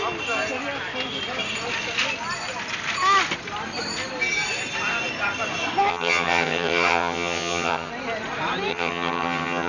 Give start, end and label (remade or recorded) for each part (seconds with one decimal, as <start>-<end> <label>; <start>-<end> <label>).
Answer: 0.0-5.9 recorded; 5.9-7.9 remade; 7.9-8.7 recorded; 8.7-9.7 remade

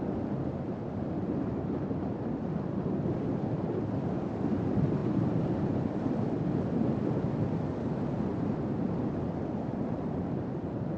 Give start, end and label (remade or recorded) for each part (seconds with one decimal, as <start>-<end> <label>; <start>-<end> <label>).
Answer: 0.0-5.0 recorded; 5.0-6.0 remade; 6.0-11.0 recorded

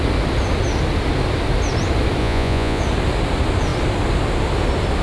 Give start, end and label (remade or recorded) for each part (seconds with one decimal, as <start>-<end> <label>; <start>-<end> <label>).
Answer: 0.0-2.2 recorded; 2.2-2.8 remade; 2.8-5.0 recorded